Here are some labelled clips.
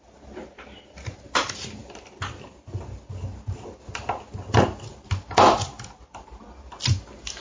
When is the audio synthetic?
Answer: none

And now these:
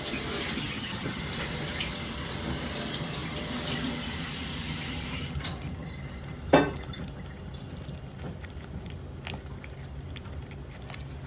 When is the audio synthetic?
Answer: 0.6-1.2 (vocoder, HiFi-GAN)

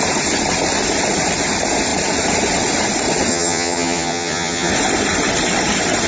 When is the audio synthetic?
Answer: 3.3-4.7 (vocoder, HiFi-GAN)

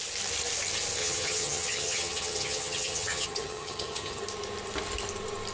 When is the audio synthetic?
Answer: 1.0-4.2 (vocoder, HiFi-GAN)

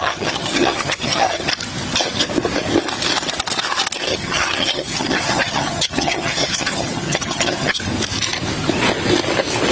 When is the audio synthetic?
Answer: 0.0-1.5 (vocoder, HiFi-GAN); 4.1-7.8

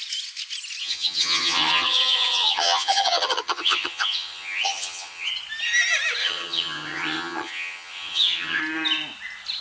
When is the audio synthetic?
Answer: 0.8-5.3 (vocoder, HiFi-GAN); 6.2-8.6